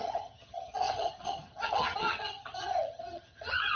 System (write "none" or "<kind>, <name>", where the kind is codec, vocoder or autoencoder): vocoder, HiFi-GAN